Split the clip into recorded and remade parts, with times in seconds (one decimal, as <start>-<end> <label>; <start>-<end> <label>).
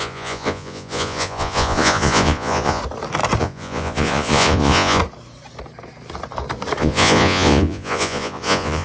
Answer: 0.0-2.8 remade; 2.8-3.4 recorded; 3.4-5.0 remade; 5.0-6.8 recorded; 6.8-8.8 remade